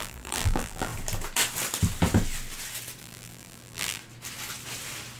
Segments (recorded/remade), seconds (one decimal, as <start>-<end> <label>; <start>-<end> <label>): 0.0-0.9 remade; 0.9-3.0 recorded; 3.0-4.0 remade; 4.0-5.2 recorded